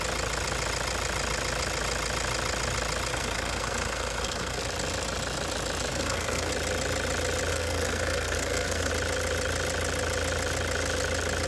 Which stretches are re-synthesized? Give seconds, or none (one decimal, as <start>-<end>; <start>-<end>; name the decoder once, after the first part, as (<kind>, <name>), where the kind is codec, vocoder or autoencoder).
3.1-4.6 (codec, SNAC); 5.9-6.5; 7.5-8.9